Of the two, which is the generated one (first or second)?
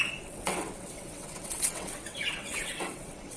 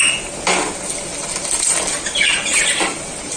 first